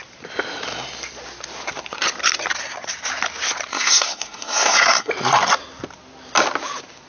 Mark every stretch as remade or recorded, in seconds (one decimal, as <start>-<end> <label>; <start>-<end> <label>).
0.0-3.7 recorded; 3.7-5.1 remade; 5.1-7.1 recorded